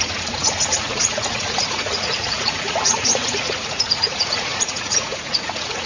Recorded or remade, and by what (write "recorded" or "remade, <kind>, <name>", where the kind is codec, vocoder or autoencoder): remade, vocoder, Vocos